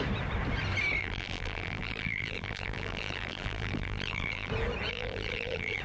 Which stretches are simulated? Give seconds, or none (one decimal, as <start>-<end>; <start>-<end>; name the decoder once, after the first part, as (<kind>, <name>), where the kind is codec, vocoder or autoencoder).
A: 1.0-4.5 (vocoder, BigVGAN v2); 4.9-5.8

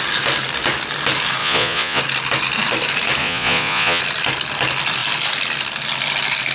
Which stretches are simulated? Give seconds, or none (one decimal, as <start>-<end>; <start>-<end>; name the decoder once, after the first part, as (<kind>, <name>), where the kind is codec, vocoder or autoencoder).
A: 1.4-2.0 (vocoder, Vocos); 3.2-4.0

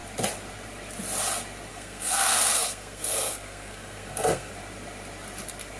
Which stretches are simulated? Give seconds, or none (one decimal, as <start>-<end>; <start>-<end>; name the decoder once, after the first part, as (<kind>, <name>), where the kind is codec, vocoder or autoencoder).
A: 1.7-4.5 (codec, SNAC)